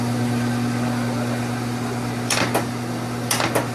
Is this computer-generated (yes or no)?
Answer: no